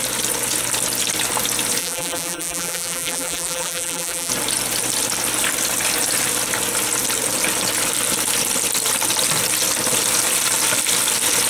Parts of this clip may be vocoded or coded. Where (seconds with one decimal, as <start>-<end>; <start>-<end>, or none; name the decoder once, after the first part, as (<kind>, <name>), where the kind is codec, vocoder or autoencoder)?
1.8-4.3 (vocoder, BigVGAN v2)